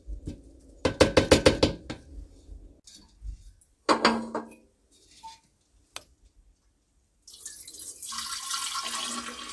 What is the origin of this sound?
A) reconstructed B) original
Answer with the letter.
B